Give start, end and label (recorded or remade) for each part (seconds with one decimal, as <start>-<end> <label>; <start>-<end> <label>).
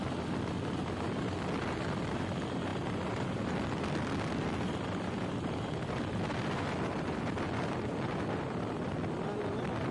0.0-9.9 recorded